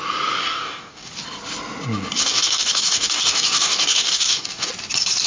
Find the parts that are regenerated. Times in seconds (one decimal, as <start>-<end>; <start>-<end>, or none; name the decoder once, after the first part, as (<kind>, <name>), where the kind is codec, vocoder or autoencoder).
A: 0.4-1.1 (codec, DAC); 2.2-4.7

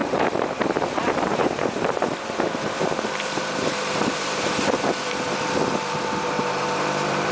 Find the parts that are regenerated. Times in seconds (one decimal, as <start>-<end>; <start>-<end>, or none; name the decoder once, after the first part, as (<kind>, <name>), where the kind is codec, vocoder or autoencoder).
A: 0.0-7.3 (vocoder, BigVGAN v2)

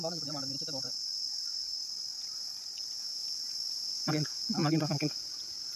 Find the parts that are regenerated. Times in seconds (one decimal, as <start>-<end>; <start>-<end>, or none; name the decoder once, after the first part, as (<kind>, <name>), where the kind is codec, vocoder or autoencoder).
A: 0.0-0.4 (vocoder, Vocos); 2.8-3.2; 4.1-5.8

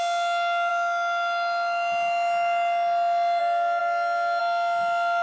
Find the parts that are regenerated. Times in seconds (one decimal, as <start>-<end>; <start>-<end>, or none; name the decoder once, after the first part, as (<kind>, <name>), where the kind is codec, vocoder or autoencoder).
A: none

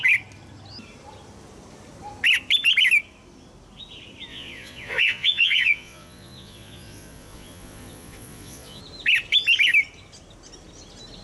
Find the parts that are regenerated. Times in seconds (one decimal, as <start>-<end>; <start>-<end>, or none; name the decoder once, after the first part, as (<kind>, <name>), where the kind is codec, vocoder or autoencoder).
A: 4.3-8.8 (vocoder, Vocos)

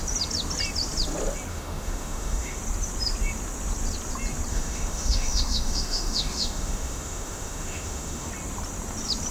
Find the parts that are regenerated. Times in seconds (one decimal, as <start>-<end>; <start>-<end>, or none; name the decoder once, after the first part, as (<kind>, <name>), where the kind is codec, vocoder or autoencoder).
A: 1.5-2.6 (autoencoder, DAC-VAE); 4.5-8.3

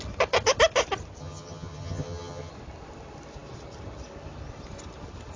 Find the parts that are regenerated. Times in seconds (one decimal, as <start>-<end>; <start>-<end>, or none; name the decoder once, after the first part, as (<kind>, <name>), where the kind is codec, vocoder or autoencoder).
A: 1.2-2.5 (vocoder, HiFi-GAN)